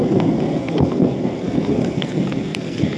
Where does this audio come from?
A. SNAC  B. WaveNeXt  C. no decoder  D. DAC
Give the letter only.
A